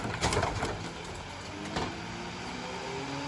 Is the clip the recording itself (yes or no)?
yes